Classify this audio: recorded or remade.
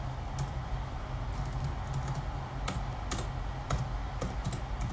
recorded